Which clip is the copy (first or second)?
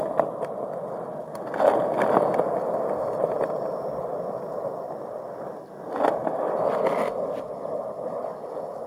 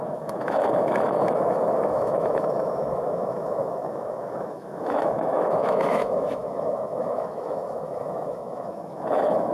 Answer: second